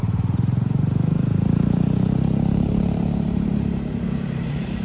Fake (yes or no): yes